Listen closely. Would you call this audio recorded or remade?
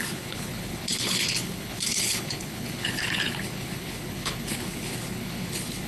remade